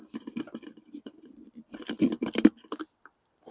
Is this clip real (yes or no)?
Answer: no